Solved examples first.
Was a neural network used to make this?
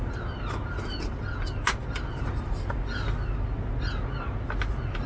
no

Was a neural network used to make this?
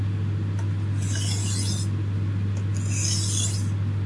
no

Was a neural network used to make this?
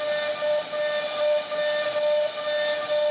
no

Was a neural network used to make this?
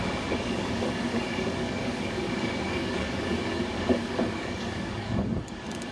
yes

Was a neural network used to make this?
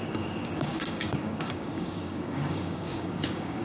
yes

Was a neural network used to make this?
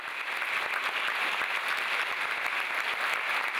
no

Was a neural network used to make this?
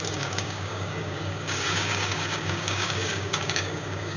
yes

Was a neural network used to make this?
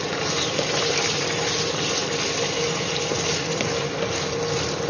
no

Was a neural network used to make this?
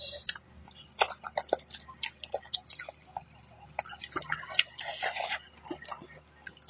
no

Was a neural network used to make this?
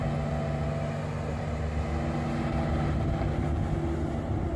no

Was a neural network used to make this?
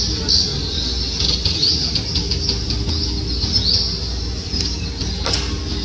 no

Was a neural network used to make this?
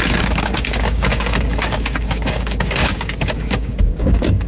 yes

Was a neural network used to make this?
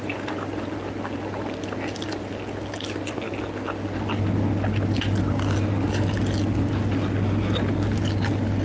no